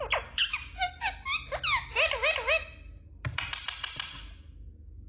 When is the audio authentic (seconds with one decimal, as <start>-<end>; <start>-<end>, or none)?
0.0-5.1